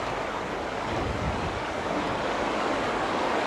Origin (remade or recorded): remade